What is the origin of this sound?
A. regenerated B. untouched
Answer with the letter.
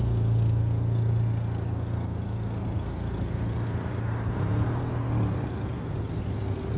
B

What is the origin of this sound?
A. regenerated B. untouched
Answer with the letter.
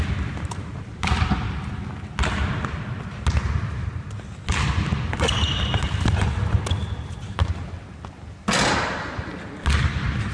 B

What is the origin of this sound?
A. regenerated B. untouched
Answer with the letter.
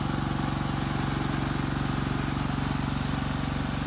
B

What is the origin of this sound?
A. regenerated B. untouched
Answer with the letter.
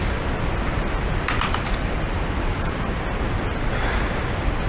B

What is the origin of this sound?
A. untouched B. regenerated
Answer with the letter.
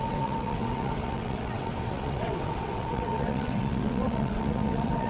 B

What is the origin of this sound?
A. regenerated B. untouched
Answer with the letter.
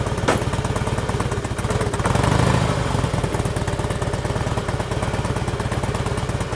B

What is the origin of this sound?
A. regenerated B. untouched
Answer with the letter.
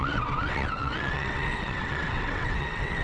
A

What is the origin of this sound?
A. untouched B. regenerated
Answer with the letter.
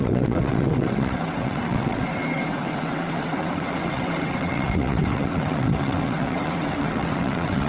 B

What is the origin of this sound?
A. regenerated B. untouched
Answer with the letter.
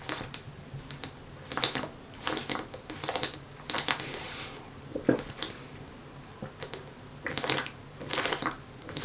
B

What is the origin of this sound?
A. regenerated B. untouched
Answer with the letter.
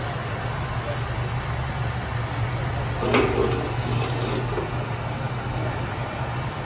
B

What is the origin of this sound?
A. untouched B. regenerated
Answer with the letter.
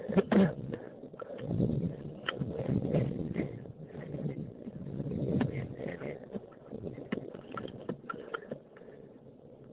B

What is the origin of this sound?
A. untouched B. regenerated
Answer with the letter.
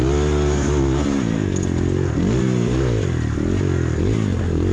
A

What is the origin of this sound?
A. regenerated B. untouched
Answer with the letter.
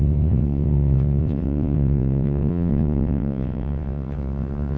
A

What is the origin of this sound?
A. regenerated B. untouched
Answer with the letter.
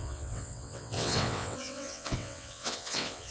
A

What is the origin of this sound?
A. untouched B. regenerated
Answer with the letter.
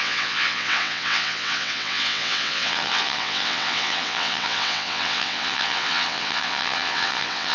B